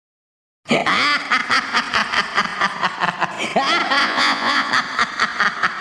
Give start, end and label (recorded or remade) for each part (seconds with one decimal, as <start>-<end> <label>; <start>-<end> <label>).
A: 0.0-4.0 recorded; 4.0-4.7 remade; 4.7-5.8 recorded